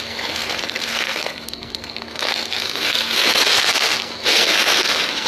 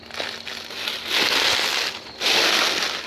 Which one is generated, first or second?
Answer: first